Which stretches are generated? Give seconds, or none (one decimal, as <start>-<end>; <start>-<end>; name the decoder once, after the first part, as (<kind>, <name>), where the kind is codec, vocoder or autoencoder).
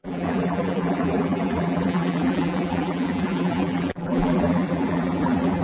0.0-5.6 (vocoder, BigVGAN v2)